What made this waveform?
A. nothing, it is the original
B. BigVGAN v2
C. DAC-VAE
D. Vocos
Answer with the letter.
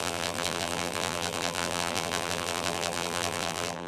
B